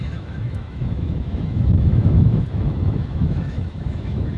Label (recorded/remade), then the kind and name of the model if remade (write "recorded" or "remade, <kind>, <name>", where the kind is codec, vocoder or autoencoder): remade, autoencoder, DAC-VAE